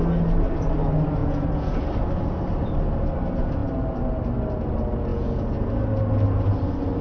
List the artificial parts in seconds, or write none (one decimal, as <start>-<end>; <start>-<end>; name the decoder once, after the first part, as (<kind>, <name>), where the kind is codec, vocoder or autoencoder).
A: 1.2-1.8 (vocoder, Vocos); 5.1-5.7